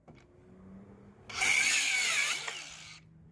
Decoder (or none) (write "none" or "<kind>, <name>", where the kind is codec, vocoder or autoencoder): none